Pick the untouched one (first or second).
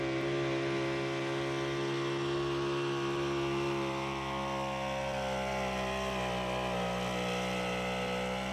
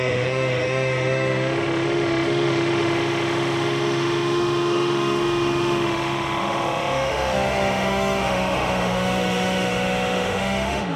first